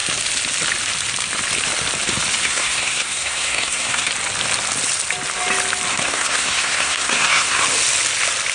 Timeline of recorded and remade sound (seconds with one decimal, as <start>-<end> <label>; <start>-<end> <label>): 0.0-2.4 recorded; 2.4-4.1 remade; 4.1-5.9 recorded; 5.9-7.6 remade; 7.6-8.5 recorded